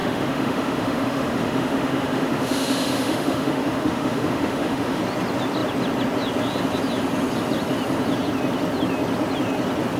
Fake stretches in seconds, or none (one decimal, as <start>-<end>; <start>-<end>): 0.0-5.0